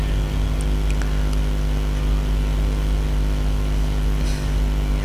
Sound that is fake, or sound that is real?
real